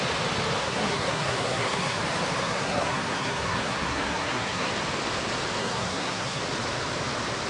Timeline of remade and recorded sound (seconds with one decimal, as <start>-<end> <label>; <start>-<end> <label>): 0.0-0.6 recorded; 0.6-2.0 remade; 2.0-2.4 recorded; 2.4-4.7 remade; 4.7-5.6 recorded; 5.6-6.4 remade; 6.4-7.5 recorded